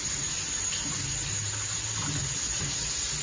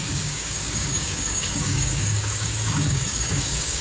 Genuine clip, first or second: first